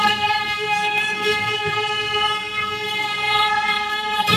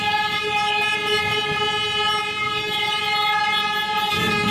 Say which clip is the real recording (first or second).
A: second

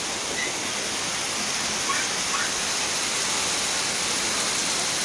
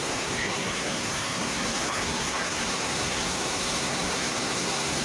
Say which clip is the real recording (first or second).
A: first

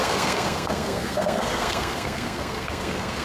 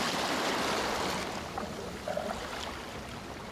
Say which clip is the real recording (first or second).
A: second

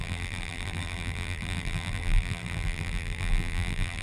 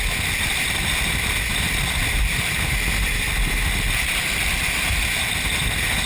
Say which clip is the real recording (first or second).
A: second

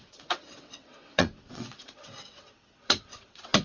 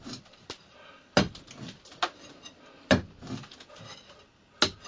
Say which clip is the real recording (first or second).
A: second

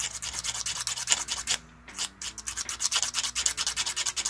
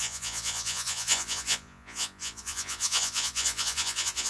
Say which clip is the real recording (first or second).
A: first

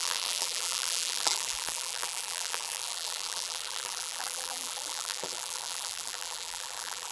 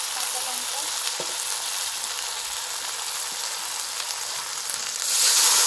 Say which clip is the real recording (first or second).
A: second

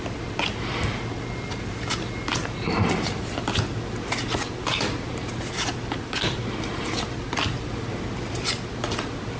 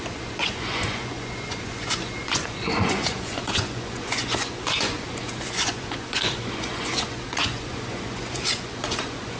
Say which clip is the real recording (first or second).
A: first